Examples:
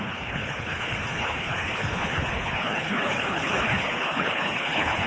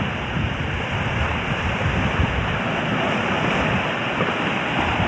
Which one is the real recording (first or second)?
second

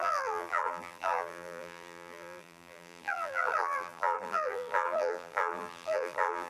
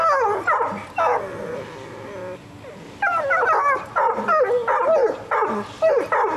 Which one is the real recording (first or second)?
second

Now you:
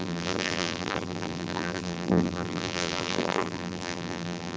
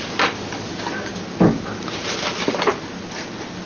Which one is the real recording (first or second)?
second